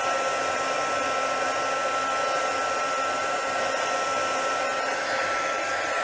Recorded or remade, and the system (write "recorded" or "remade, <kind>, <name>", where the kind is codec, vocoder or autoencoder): recorded